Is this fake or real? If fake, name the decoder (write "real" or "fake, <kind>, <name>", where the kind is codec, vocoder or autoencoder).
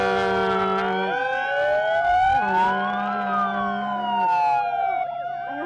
real